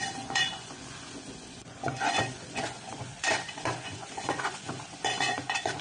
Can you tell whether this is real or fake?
fake